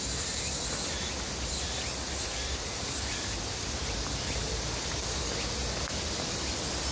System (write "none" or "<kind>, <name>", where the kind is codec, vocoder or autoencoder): none